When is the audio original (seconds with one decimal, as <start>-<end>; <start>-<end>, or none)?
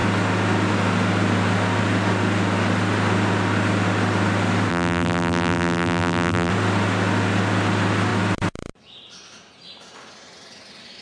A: 0.0-4.7; 6.5-11.0